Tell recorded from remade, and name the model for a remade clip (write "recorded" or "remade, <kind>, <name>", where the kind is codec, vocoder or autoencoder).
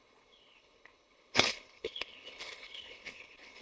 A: remade, codec, HILCodec